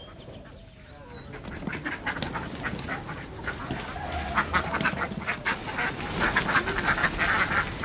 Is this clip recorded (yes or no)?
yes